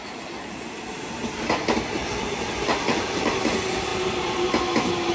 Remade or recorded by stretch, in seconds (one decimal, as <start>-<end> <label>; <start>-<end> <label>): 0.0-0.6 remade; 0.6-2.0 recorded; 2.0-3.3 remade; 3.3-3.9 recorded; 3.9-4.5 remade; 4.5-5.1 recorded